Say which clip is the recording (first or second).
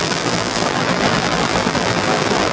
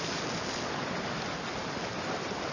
second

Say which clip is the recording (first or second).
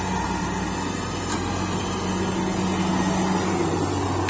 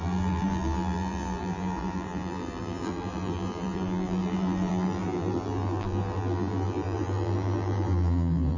first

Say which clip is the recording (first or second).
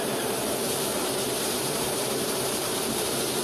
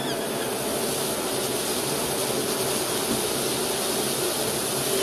second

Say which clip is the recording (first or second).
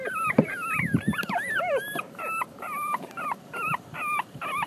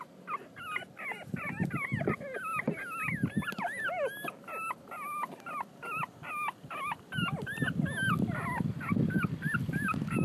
second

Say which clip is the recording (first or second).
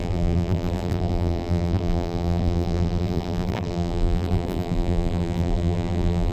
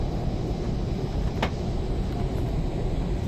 second